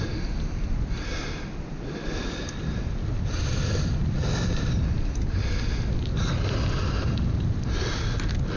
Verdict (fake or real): real